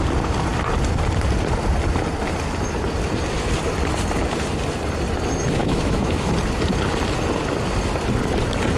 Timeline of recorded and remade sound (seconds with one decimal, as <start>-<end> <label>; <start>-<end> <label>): 0.0-5.6 recorded; 5.6-6.3 remade; 6.3-8.8 recorded